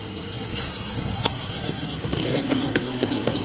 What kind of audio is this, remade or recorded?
remade